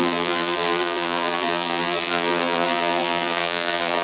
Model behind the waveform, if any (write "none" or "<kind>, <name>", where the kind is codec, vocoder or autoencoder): vocoder, BigVGAN v2